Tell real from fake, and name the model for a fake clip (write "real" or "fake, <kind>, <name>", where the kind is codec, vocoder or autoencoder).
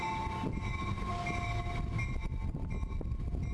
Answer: real